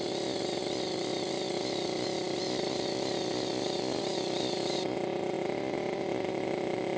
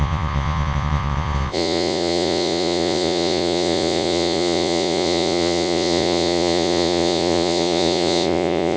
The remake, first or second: second